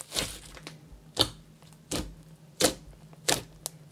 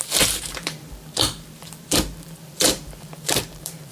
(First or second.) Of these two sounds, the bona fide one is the first